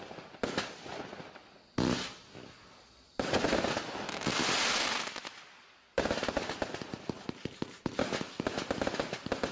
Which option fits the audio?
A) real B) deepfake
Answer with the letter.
A